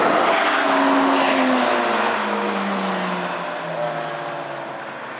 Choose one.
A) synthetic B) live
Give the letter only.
B